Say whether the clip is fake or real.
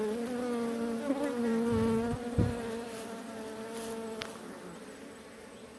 real